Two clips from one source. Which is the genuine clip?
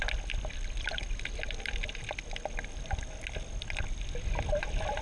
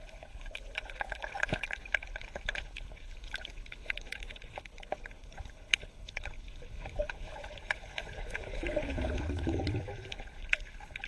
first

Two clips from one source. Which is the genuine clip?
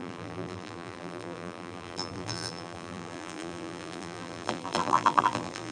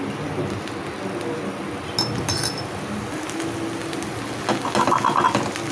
second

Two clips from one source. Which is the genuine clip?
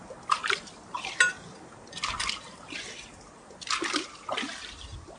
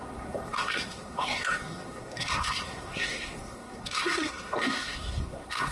first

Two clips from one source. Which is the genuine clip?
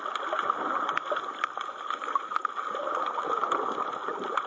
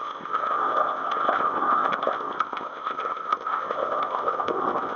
first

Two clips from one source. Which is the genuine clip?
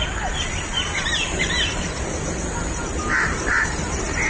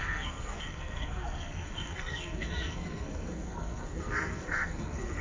first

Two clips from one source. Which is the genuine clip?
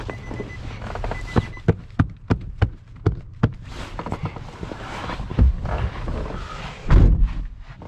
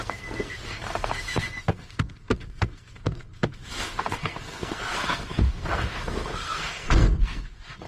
first